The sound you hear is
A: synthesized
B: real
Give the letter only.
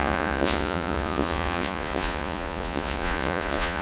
A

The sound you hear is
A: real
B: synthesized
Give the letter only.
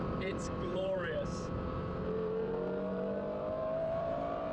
B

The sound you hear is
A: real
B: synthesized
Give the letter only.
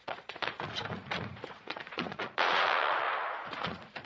B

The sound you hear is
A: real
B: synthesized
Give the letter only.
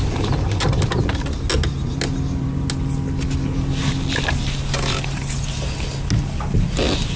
A